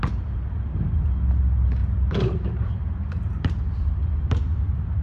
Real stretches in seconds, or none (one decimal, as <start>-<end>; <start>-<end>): 0.0-1.8